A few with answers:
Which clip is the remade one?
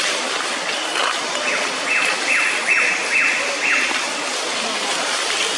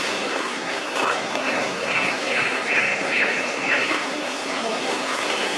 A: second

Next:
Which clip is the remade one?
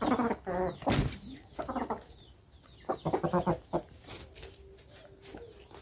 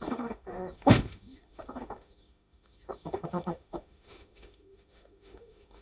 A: second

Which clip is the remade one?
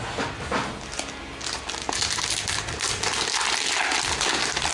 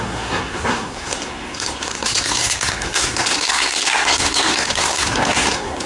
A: second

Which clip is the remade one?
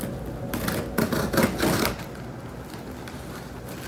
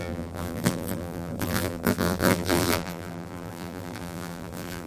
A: second